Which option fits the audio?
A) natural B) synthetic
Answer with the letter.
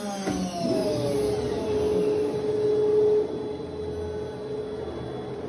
A